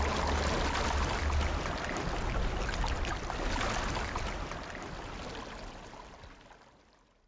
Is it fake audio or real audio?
real